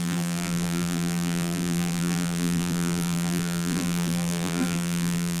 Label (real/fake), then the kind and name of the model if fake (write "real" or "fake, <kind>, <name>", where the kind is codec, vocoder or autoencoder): fake, vocoder, BigVGAN v2